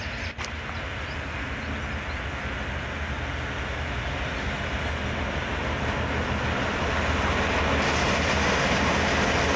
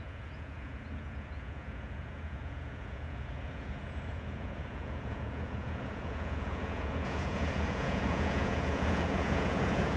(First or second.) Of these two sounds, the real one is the first